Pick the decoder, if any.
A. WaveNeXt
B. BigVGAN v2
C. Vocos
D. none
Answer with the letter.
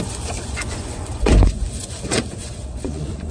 C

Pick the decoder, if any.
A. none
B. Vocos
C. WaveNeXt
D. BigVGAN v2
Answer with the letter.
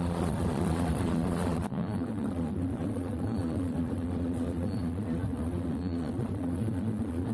B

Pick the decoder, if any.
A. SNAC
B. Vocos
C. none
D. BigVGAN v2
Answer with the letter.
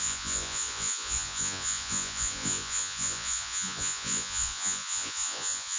B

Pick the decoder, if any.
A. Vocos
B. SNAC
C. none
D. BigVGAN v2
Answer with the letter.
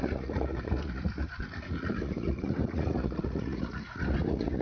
A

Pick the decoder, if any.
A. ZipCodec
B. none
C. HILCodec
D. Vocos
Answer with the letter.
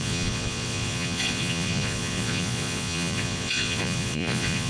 D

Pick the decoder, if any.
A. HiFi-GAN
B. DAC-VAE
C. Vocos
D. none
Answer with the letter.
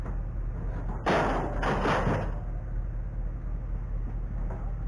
D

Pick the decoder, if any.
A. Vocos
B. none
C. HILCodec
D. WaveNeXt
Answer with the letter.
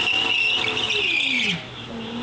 B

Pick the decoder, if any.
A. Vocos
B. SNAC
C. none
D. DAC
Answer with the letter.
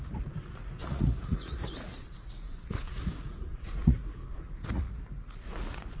A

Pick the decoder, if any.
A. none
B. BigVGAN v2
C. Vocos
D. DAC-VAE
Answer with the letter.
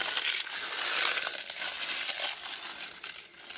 A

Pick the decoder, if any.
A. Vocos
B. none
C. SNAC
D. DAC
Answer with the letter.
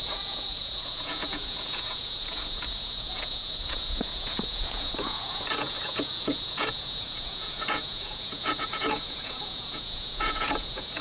A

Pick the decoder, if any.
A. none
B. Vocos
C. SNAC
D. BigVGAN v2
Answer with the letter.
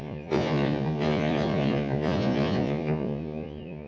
B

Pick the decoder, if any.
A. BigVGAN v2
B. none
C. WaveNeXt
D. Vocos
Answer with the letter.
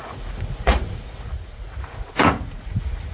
D